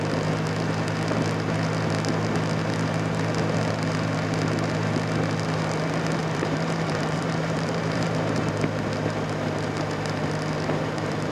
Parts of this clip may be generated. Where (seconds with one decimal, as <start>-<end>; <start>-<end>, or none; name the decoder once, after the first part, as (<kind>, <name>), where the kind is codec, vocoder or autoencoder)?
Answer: 6.2-8.5 (vocoder, BigVGAN v2)